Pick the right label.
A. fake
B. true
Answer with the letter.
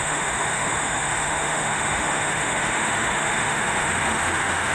A